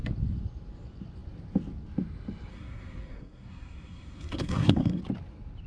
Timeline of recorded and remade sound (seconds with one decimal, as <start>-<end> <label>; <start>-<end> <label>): 0.0-2.5 recorded; 2.5-5.0 remade; 5.0-5.7 recorded